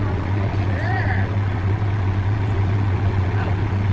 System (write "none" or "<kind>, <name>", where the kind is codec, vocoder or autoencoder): vocoder, WaveNeXt